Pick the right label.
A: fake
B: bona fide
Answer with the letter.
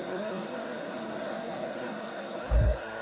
A